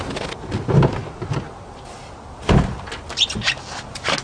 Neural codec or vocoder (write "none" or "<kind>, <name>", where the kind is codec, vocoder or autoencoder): none